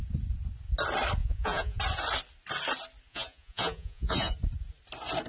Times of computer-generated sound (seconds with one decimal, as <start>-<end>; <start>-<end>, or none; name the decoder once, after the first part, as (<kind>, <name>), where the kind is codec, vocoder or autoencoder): 1.2-1.8 (vocoder, Vocos); 3.1-4.3